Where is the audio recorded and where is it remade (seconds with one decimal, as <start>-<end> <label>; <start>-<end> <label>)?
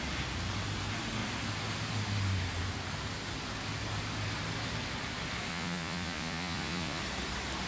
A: 0.0-5.5 recorded; 5.5-7.0 remade; 7.0-7.7 recorded